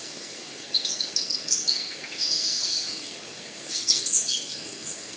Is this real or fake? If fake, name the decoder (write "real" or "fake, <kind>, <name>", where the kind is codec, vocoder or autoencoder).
fake, codec, SNAC